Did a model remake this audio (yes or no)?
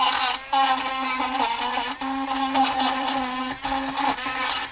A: no